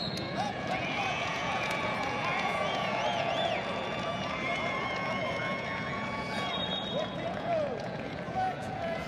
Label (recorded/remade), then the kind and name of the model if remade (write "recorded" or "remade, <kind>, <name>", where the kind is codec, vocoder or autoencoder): remade, vocoder, Vocos